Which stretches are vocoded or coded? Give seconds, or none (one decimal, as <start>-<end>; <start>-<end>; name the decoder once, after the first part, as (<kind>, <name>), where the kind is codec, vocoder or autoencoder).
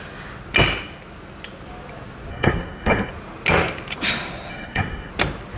2.3-3.1 (codec, SNAC); 4.5-5.1